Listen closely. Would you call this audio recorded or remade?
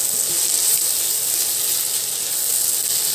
recorded